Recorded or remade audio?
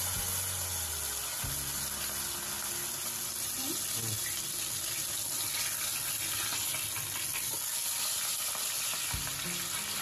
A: recorded